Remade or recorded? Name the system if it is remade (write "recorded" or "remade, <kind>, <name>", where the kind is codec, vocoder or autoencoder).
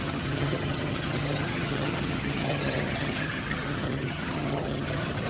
remade, vocoder, HiFi-GAN